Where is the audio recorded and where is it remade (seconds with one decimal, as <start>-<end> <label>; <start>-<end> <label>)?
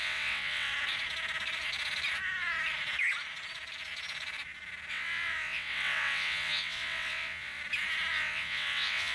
0.0-0.7 remade; 0.7-4.9 recorded; 4.9-7.6 remade; 7.6-8.1 recorded; 8.1-9.1 remade